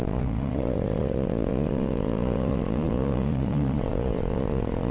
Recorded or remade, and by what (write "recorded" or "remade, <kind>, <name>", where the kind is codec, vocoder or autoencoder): remade, vocoder, Vocos